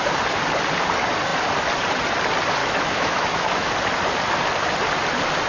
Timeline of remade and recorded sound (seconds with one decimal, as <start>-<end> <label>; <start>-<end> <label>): 0.0-2.6 recorded; 2.6-3.7 remade; 3.7-5.5 recorded